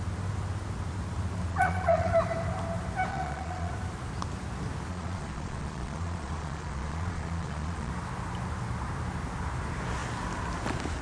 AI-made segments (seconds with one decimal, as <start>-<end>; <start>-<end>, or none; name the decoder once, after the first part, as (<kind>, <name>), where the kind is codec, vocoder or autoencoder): 1.5-2.1 (vocoder, Vocos); 3.1-3.7; 4.9-7.9